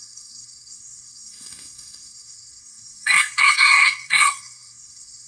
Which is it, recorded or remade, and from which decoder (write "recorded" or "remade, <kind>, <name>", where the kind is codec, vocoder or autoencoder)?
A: remade, codec, SNAC